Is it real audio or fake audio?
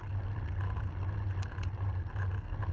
real